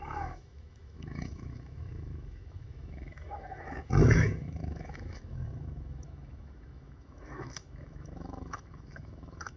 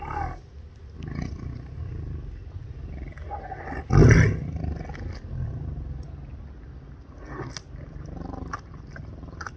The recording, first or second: second